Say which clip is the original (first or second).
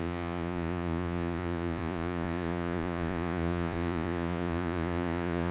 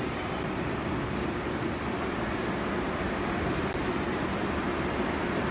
second